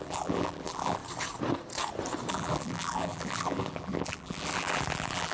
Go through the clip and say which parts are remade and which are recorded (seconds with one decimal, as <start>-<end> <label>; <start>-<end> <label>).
0.0-1.0 remade; 1.0-2.3 recorded; 2.3-5.3 remade